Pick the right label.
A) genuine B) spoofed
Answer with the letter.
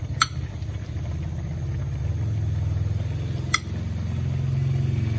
A